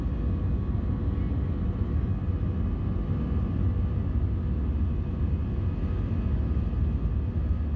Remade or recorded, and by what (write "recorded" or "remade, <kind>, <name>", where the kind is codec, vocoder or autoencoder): recorded